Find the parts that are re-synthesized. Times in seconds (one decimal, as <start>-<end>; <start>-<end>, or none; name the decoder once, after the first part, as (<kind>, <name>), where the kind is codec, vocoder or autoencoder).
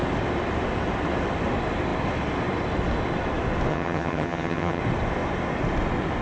3.7-4.8 (vocoder, HiFi-GAN)